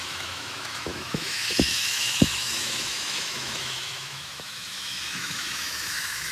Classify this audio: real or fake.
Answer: fake